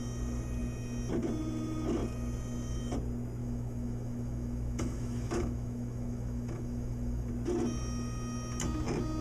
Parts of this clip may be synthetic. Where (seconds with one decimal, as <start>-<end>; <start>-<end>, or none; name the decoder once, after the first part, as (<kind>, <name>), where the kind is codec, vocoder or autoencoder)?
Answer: 3.4-7.3 (autoencoder, DAC-VAE)